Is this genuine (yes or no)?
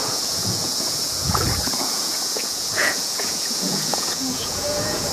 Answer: no